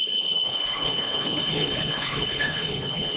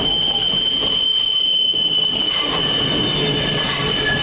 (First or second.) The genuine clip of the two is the second